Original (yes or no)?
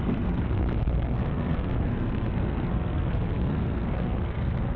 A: no